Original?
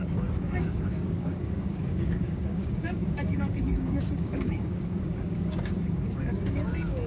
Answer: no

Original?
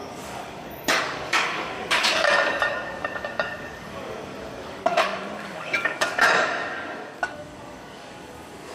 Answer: no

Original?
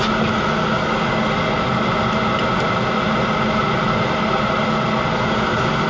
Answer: yes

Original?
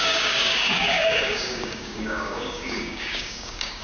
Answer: no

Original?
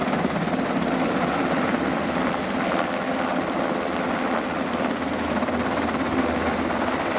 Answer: yes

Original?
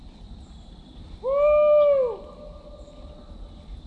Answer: yes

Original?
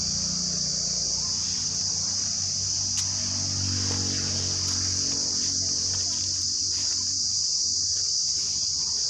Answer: yes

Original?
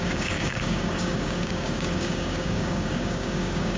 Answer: no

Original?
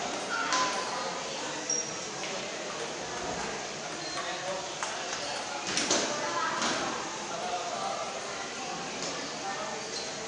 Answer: yes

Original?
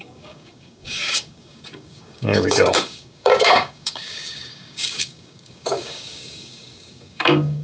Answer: no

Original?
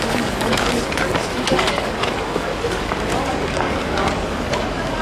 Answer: no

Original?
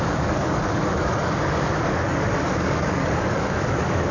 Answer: no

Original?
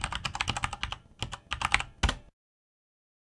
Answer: yes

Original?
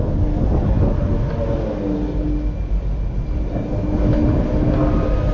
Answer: yes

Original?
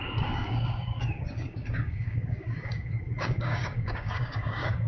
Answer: no